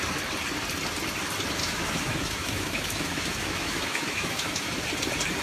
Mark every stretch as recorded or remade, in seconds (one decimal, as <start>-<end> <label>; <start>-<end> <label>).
0.0-1.6 recorded; 1.6-4.8 remade; 4.8-5.4 recorded